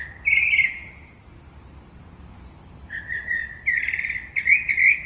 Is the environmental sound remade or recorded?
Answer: recorded